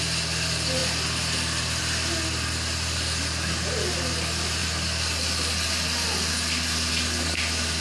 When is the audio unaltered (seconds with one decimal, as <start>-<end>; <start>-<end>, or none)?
0.0-7.8